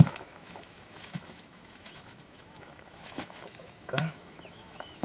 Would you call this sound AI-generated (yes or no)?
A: yes